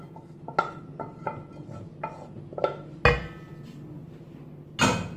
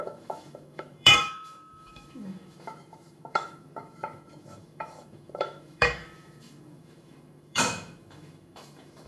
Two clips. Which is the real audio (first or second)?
first